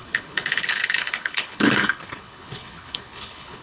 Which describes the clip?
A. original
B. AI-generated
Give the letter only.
B